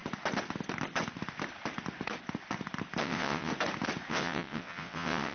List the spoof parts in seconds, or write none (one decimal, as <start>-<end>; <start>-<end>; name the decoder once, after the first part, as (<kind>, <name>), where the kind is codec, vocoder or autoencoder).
3.0-3.5 (vocoder, WaveNeXt); 4.1-5.3

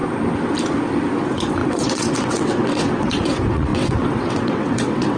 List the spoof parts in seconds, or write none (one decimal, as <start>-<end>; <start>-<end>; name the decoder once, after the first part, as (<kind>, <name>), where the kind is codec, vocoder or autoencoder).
1.2-5.2 (vocoder, WaveNeXt)

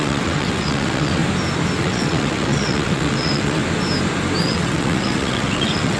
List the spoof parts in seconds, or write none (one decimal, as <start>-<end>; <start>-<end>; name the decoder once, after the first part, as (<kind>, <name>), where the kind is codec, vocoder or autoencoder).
0.0-1.2 (vocoder, WaveNeXt); 1.8-3.6; 4.4-6.0

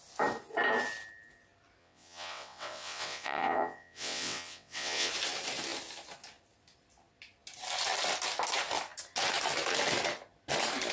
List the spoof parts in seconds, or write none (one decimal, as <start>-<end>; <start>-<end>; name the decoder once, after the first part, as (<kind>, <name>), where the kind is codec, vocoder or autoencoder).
1.8-5.1 (vocoder, WaveNeXt)

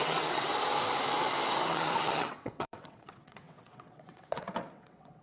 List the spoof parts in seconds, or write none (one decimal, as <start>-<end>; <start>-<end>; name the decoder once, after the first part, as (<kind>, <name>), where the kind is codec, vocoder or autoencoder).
0.0-0.5 (vocoder, WaveNeXt); 1.7-5.2

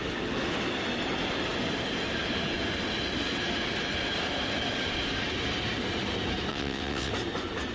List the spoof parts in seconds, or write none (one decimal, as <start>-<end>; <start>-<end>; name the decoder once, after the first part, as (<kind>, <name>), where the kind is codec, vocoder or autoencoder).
6.5-7.1 (vocoder, WaveNeXt)

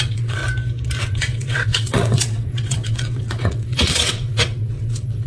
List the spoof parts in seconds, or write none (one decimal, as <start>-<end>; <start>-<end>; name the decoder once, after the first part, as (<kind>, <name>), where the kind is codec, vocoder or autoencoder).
0.0-0.4 (vocoder, WaveNeXt); 1.0-5.3